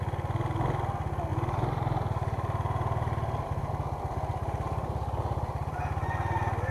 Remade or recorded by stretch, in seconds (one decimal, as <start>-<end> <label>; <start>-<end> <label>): 0.0-1.3 recorded; 1.3-3.7 remade; 3.7-4.3 recorded; 4.3-5.7 remade; 5.7-6.7 recorded